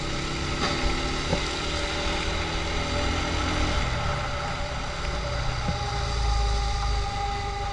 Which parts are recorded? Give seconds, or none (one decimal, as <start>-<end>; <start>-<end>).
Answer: 0.0-7.7

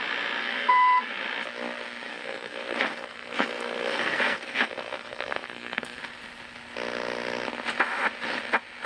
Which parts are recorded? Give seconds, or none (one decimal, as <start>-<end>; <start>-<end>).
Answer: 0.0-0.4; 1.2-2.1; 6.0-8.9

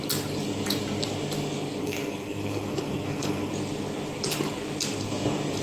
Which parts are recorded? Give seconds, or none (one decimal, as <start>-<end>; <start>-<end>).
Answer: 0.0-1.8; 3.5-5.6

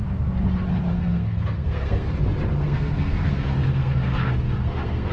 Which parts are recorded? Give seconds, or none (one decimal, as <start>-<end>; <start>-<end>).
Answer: 0.0-0.9; 2.1-2.6

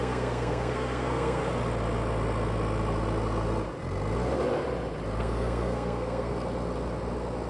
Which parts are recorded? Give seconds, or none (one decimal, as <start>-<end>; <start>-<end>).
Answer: 1.4-5.2; 6.3-7.5

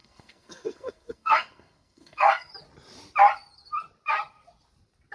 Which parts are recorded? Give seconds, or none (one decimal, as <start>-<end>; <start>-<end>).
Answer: 2.5-5.1

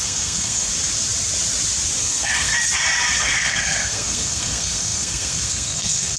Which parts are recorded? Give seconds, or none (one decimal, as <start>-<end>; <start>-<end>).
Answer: 0.7-2.0; 2.5-3.2

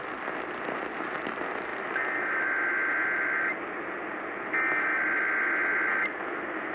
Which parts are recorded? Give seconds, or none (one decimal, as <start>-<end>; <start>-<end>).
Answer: 0.0-6.7